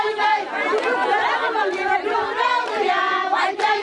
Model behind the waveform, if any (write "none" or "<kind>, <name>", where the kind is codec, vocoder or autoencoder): none